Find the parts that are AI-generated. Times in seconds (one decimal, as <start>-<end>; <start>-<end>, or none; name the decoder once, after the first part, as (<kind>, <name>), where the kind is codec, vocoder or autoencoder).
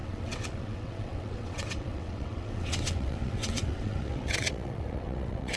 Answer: 0.0-5.6 (vocoder, WaveNeXt)